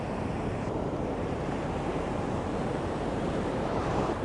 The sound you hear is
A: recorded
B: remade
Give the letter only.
B